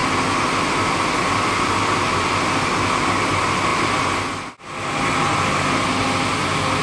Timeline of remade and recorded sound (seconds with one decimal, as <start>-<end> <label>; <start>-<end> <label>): 0.0-6.8 recorded